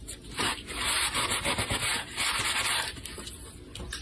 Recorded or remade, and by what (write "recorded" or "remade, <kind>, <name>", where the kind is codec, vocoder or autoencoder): recorded